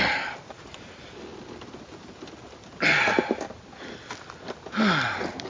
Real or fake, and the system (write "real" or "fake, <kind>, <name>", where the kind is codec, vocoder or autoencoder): real